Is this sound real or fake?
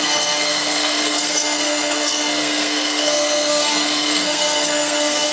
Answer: fake